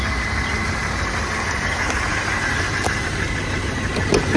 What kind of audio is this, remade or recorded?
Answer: recorded